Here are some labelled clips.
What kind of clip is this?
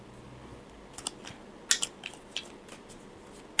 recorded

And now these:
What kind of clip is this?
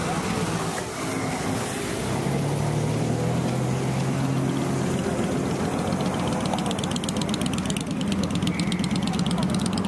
recorded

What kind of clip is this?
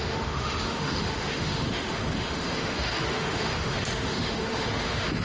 remade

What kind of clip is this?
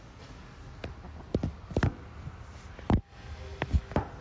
recorded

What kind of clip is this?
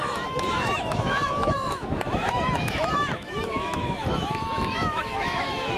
remade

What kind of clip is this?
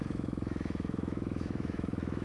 remade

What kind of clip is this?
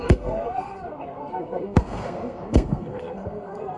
remade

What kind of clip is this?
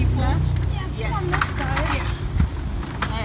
recorded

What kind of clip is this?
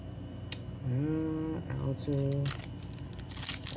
recorded